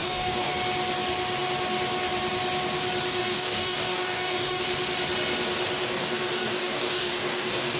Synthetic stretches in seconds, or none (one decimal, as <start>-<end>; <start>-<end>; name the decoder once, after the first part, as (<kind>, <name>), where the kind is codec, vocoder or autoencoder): 0.0-0.5 (codec, DAC); 3.2-4.6; 5.7-7.8